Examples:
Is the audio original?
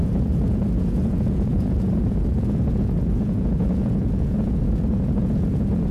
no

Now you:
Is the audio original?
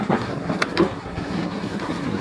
no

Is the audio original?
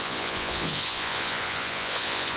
no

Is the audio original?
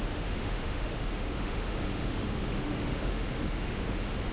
no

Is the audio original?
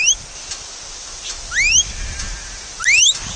yes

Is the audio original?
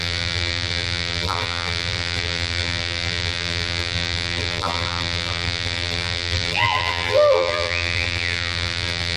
no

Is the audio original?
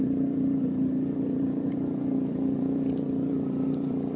no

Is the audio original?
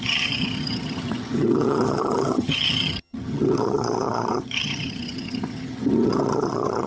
no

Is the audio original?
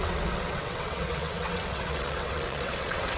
no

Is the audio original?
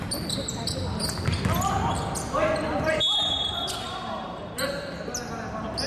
yes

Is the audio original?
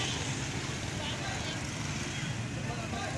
yes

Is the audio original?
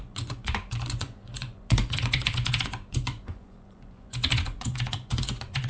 no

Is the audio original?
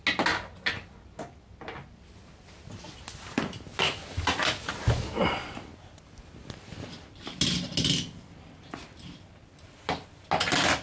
yes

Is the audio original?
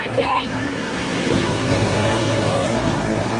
no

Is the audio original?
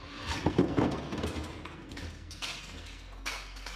no